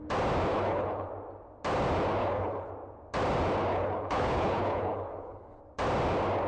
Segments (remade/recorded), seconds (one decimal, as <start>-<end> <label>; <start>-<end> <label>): 0.0-0.5 recorded; 0.5-1.1 remade; 1.1-2.2 recorded; 2.2-2.7 remade; 2.7-3.7 recorded; 3.7-5.6 remade; 5.6-6.5 recorded